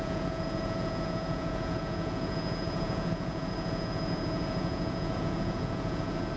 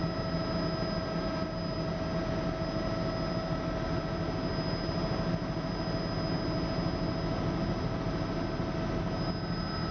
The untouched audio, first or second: second